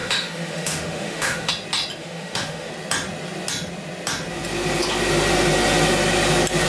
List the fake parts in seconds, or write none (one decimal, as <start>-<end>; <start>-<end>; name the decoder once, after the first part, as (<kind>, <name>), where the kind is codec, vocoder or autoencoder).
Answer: 0.0-1.5 (autoencoder, DAC-VAE); 2.0-2.7